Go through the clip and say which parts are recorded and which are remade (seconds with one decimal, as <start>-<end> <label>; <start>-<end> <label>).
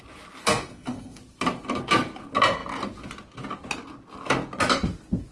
0.0-0.4 recorded; 0.4-1.2 remade; 1.2-5.3 recorded